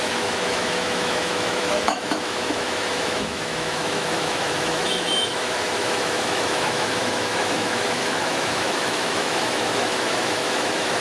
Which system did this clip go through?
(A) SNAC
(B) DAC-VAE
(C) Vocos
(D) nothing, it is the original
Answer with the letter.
B